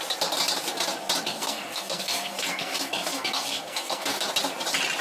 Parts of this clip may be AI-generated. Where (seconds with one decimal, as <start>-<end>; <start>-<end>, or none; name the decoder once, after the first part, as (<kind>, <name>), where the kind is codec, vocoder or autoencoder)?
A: 1.3-4.3 (codec, SNAC)